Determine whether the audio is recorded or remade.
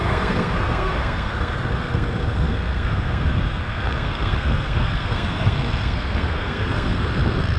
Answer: remade